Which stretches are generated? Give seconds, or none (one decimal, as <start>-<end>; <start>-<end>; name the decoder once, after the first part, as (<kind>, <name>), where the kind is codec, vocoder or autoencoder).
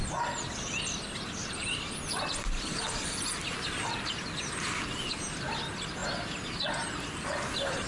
none